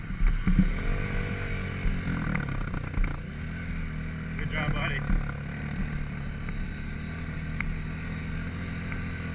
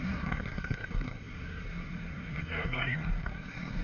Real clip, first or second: first